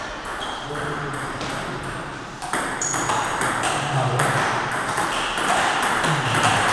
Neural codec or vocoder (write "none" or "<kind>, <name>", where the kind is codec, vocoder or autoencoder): vocoder, BigVGAN v2